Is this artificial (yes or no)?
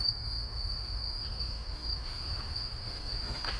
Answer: yes